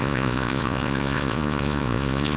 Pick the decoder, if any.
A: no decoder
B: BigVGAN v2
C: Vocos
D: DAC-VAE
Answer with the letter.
C